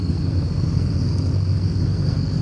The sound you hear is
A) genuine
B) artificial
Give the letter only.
B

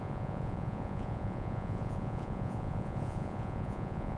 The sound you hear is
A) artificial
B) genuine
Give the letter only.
A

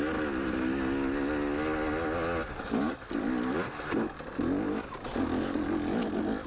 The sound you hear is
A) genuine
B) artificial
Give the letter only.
A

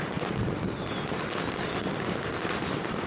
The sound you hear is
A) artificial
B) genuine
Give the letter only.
B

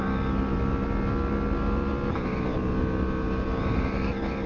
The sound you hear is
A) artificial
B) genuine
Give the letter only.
B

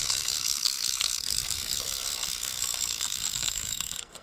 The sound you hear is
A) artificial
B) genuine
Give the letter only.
A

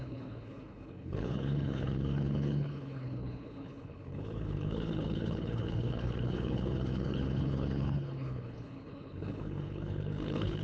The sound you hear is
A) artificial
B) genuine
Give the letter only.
A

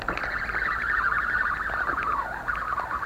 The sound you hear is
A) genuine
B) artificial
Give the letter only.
A